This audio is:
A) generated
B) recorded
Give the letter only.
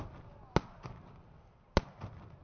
B